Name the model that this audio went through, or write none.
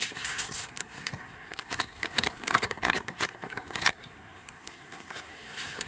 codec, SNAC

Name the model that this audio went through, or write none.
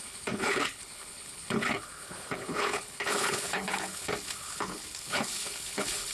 codec, HILCodec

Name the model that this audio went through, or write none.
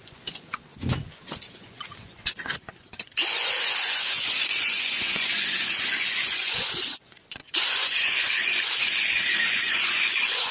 vocoder, Vocos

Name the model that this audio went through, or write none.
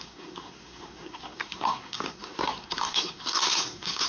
codec, SNAC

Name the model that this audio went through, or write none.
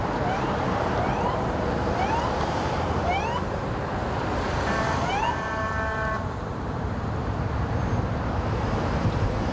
vocoder, BigVGAN v2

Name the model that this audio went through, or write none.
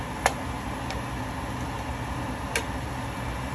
none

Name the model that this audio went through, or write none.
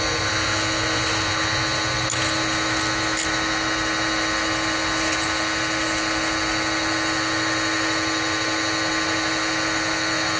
none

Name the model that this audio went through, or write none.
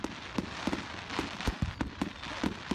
none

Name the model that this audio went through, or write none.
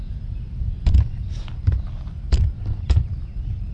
vocoder, BigVGAN v2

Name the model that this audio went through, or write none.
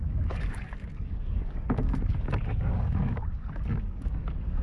codec, DAC